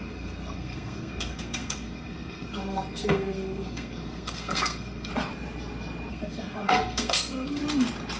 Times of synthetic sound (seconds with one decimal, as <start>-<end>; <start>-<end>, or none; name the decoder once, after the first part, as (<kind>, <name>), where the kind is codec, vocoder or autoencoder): 0.0-5.1 (codec, SNAC); 6.1-7.6